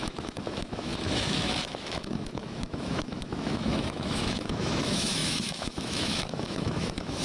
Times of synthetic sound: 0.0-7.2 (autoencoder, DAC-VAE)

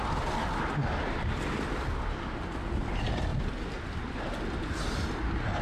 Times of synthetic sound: none

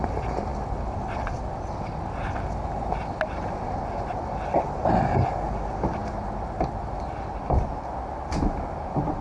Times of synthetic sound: none

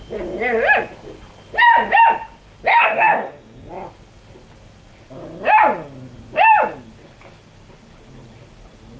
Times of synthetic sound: 2.7-3.7 (codec, DAC)